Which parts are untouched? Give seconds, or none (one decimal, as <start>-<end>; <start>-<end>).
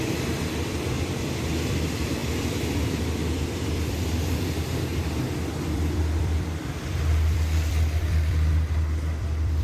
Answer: none